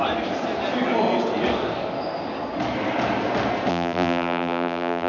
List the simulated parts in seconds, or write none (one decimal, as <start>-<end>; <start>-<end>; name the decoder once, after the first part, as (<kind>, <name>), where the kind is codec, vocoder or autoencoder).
3.7-5.1 (vocoder, BigVGAN v2)